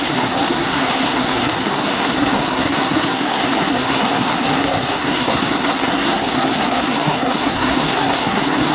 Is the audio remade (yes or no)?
yes